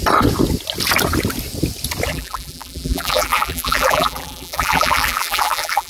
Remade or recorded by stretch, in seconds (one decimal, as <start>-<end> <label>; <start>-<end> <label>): 0.0-2.1 recorded; 2.1-5.9 remade